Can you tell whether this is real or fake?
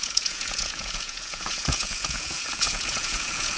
fake